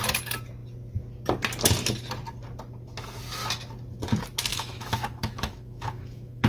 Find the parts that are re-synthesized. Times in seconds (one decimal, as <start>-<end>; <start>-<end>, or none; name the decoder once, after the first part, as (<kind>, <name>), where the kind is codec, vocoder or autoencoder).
4.5-6.5 (autoencoder, DAC-VAE)